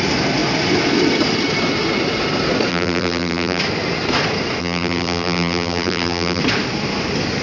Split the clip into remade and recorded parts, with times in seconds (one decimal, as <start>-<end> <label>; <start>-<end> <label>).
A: 0.0-2.7 recorded; 2.7-3.6 remade; 3.6-4.6 recorded; 4.6-6.4 remade; 6.4-7.4 recorded